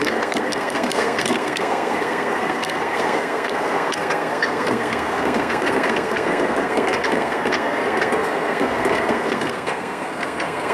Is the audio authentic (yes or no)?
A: no